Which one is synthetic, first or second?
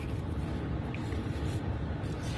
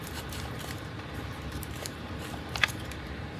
second